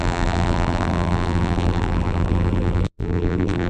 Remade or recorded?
remade